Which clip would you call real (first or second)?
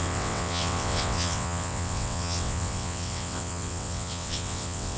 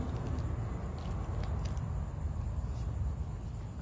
second